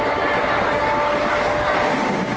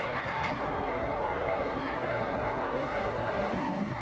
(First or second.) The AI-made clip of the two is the second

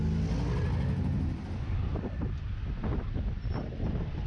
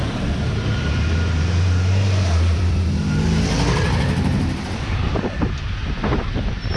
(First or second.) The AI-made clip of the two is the second